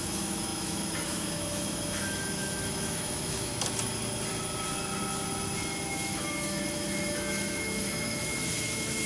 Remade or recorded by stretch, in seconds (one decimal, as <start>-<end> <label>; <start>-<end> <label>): 0.0-3.5 remade; 3.5-5.9 recorded; 5.9-9.1 remade